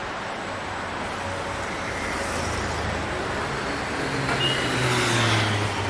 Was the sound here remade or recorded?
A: recorded